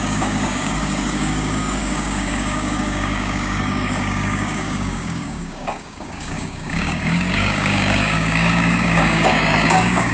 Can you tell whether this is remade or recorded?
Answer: remade